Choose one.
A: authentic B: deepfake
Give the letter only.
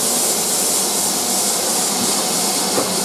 A